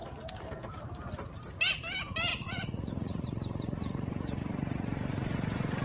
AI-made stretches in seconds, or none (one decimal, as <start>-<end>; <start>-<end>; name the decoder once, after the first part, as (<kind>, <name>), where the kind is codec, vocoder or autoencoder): 2.3-5.8 (vocoder, Vocos)

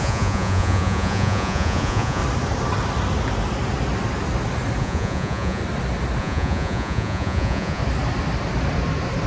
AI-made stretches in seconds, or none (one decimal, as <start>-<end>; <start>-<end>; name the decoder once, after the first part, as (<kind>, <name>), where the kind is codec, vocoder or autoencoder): 0.0-2.2 (vocoder, Vocos); 4.8-5.6; 6.2-7.8

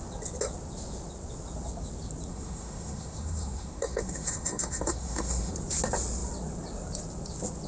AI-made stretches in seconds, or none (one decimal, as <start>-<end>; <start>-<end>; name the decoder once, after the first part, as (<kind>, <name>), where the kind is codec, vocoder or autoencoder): 2.3-5.5 (autoencoder, DAC-VAE)

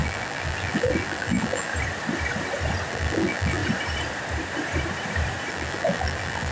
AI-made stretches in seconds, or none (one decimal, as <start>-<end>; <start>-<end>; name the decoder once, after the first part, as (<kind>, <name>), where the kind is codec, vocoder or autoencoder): 0.0-1.7 (vocoder, BigVGAN v2); 2.9-3.6; 5.5-6.5

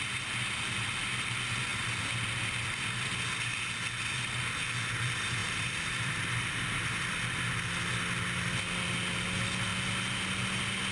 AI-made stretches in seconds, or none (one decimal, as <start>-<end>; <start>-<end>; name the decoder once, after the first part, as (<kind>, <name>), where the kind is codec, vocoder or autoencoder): 5.4-6.2 (vocoder, BigVGAN v2)

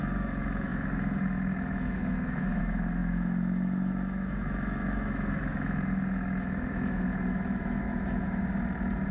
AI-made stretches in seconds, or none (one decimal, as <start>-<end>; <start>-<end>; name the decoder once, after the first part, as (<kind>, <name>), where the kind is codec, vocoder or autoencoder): 0.0-8.4 (autoencoder, DAC-VAE)

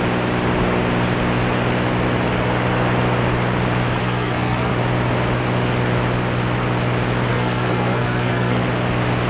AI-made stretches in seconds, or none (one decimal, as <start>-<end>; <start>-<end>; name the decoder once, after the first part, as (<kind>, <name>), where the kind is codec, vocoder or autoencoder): 4.0-4.7 (codec, SNAC); 7.3-8.7

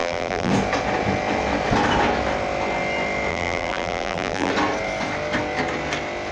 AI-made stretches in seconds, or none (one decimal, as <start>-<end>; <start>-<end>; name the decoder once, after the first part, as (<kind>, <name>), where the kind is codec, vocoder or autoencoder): 0.0-0.5 (vocoder, BigVGAN v2); 3.3-4.5